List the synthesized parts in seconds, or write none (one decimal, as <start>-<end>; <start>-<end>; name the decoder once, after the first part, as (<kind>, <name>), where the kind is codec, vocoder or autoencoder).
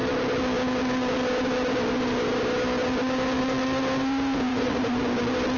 4.5-5.0 (vocoder, Vocos)